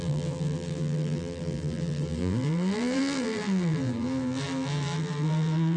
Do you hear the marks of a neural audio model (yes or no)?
yes